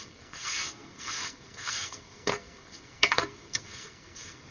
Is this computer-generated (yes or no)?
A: yes